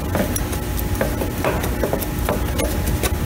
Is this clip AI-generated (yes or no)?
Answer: no